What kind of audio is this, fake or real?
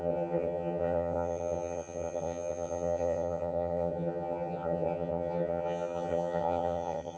fake